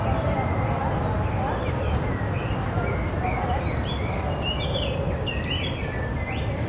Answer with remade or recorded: recorded